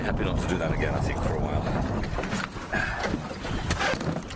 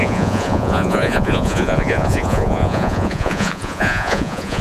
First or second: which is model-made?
second